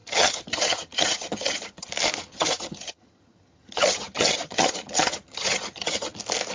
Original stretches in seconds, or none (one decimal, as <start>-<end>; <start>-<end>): 1.9-2.3; 6.1-6.5

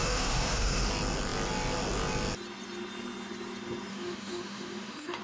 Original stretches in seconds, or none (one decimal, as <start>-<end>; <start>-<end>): 0.9-3.9

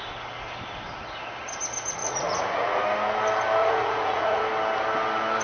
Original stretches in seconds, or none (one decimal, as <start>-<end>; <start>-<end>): 0.0-2.0; 2.8-3.6; 4.4-5.4

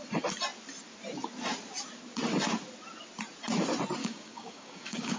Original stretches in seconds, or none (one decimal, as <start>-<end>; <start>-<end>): 0.0-4.0

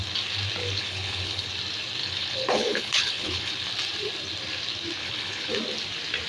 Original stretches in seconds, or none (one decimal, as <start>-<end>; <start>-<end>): 0.0-0.6; 1.5-2.0; 3.5-5.0; 5.5-6.3

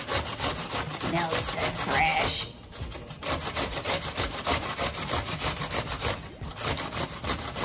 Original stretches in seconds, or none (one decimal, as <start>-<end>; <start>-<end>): 0.0-2.1; 6.5-7.6

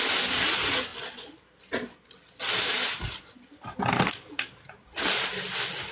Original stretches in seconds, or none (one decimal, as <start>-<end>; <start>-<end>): 0.0-5.9

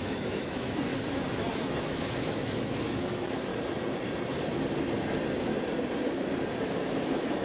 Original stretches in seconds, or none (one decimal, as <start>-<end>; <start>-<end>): 0.9-1.5; 3.5-6.6